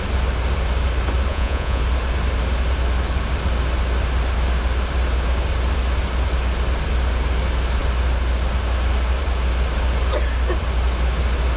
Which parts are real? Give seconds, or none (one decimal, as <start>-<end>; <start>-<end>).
0.0-1.3; 1.8-11.6